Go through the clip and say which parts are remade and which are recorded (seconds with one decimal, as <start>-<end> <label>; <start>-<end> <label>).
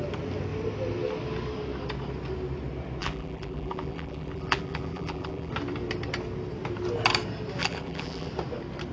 0.0-3.0 recorded; 3.0-5.5 remade; 5.5-7.6 recorded; 7.6-8.3 remade; 8.3-8.9 recorded